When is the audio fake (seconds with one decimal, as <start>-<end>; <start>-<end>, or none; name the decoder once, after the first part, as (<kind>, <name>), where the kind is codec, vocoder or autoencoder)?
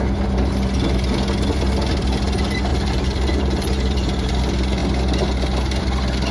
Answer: 2.7-4.3 (vocoder, BigVGAN v2)